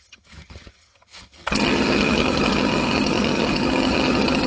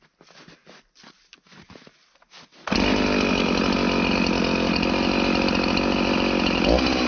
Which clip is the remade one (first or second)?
first